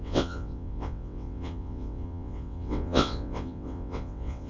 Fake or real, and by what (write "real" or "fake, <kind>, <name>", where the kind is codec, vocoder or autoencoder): fake, vocoder, WaveNeXt